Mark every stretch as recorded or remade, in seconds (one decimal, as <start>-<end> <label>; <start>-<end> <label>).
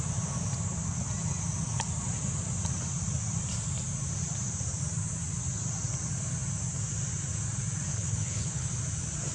0.0-7.9 recorded; 7.9-8.7 remade; 8.7-9.3 recorded